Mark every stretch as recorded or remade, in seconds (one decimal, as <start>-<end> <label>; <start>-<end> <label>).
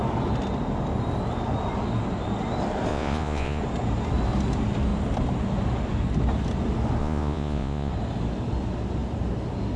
0.0-2.9 recorded; 2.9-3.6 remade; 3.6-7.0 recorded; 7.0-7.9 remade; 7.9-9.8 recorded